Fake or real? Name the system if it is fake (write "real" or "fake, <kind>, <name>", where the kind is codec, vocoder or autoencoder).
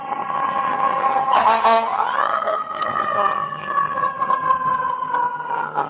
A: fake, vocoder, HiFi-GAN